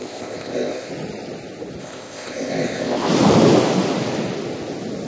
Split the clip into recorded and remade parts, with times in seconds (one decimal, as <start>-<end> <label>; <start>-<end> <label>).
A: 0.0-0.9 remade; 0.9-1.8 recorded; 1.8-3.1 remade; 3.1-5.1 recorded